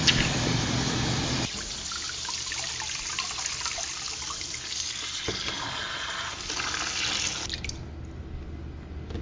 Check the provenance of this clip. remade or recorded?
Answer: recorded